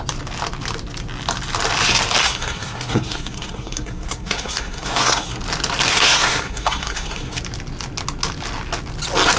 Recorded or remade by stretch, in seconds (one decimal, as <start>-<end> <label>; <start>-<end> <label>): 0.0-2.2 recorded; 2.2-5.4 remade; 5.4-5.9 recorded; 5.9-7.4 remade; 7.4-9.4 recorded